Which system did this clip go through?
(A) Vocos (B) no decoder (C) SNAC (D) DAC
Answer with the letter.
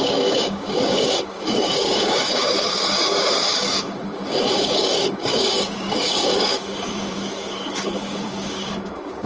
D